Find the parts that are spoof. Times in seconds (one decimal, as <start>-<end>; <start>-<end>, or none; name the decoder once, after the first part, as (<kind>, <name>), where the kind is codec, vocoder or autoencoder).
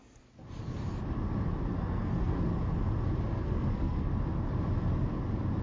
1.7-2.4 (codec, SNAC); 3.3-4.1